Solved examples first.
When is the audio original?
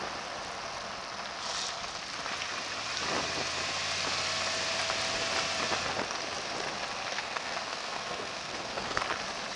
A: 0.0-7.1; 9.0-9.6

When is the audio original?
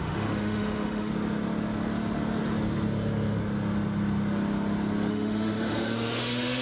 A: 1.1-5.1